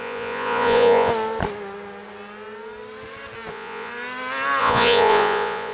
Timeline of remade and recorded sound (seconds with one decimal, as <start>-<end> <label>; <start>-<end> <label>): 0.0-1.1 remade; 1.1-3.5 recorded; 3.5-3.9 remade; 3.9-4.6 recorded; 4.6-5.7 remade